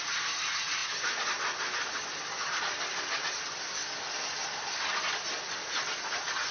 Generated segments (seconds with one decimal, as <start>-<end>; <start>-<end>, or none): none